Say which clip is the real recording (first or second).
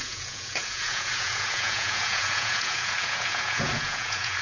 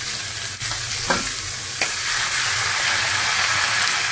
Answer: second